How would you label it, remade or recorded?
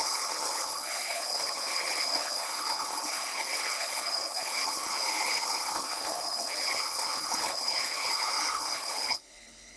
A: remade